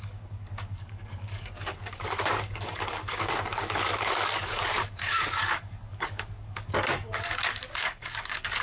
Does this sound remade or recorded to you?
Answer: remade